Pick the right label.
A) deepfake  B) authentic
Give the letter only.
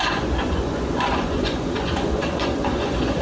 A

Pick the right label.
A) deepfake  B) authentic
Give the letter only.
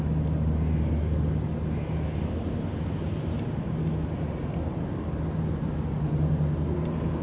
B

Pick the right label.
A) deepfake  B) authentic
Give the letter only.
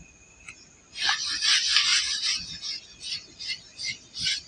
B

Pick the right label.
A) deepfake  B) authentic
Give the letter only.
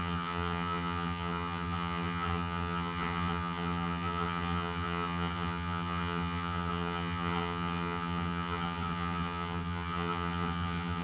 A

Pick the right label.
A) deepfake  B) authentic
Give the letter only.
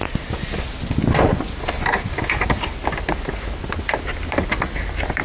B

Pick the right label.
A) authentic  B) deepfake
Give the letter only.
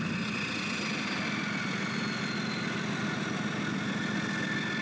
A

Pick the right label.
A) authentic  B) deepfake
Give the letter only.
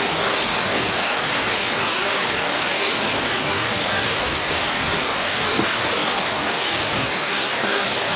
B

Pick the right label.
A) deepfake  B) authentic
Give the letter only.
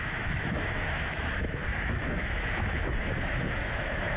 A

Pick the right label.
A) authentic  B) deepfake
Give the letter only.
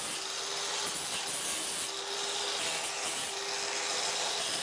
A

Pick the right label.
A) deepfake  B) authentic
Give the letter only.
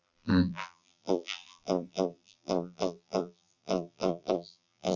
A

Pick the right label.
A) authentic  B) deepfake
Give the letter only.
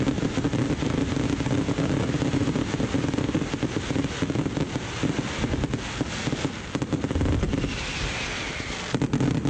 A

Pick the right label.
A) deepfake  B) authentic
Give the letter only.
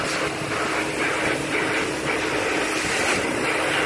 B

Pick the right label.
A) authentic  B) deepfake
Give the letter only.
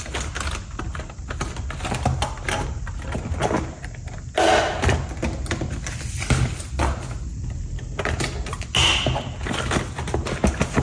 A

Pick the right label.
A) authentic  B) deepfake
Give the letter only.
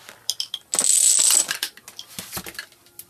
A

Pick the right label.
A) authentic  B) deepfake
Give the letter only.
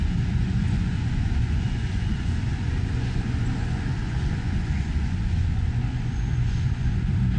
B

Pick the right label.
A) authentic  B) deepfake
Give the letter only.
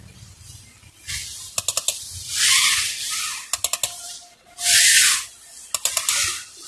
A